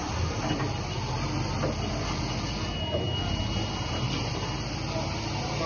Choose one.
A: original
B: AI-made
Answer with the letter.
A